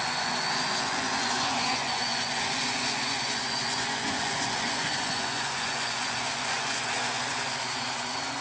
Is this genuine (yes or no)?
no